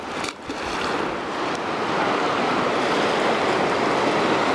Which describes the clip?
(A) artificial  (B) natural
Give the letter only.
B